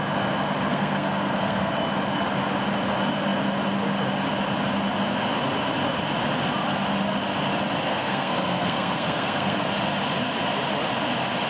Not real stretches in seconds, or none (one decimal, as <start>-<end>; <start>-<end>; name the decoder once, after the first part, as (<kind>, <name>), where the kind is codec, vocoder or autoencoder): 0.7-1.7 (codec, SNAC); 7.9-9.7